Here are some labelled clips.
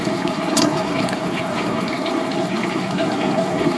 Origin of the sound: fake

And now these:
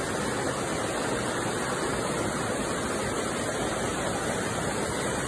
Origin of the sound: real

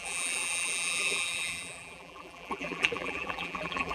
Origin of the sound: fake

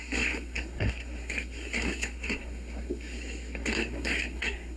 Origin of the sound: fake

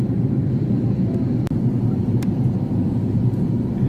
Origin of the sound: fake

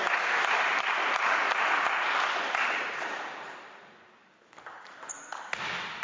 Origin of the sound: real